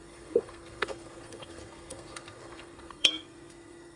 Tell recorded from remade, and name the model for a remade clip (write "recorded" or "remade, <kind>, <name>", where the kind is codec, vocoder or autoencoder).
remade, codec, SNAC